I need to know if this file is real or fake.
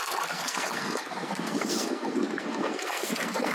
fake